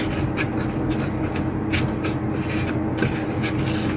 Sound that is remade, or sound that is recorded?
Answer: recorded